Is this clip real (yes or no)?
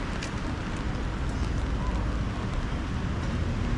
yes